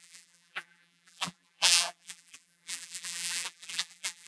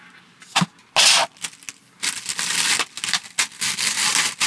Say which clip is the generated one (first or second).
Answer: first